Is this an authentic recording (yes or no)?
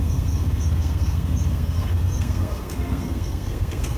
no